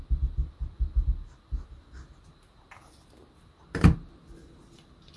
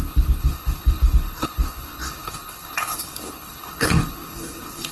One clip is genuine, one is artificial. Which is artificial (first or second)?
second